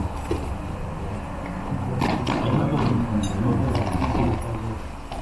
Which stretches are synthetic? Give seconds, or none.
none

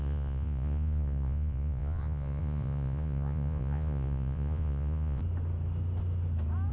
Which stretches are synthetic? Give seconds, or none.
0.0-5.2 (vocoder, Vocos)

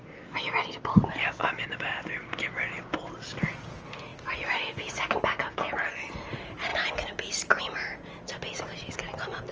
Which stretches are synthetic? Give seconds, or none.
none

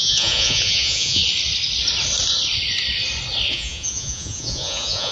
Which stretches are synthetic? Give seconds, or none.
0.0-1.2 (vocoder, Vocos); 3.5-5.1

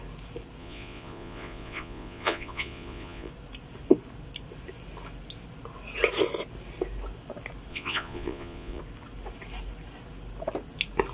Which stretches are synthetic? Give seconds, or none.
0.6-3.3 (vocoder, Vocos); 7.7-8.8

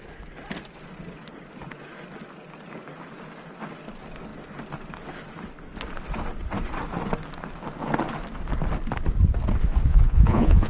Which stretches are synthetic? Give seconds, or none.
9.9-10.7 (vocoder, Vocos)

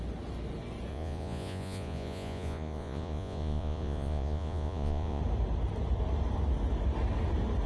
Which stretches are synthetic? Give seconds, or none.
0.9-5.2 (vocoder, Vocos)